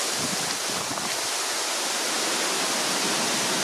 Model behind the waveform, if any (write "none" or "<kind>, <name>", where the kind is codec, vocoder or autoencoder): none